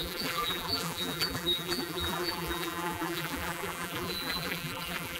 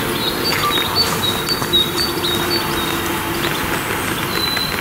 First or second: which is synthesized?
first